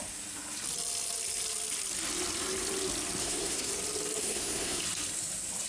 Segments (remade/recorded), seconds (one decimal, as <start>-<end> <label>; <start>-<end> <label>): 0.0-3.2 recorded; 3.2-3.7 remade; 3.7-4.2 recorded; 4.2-4.8 remade; 4.8-5.7 recorded